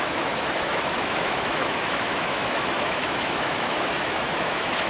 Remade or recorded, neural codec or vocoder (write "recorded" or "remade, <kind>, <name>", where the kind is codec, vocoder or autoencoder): remade, autoencoder, DAC-VAE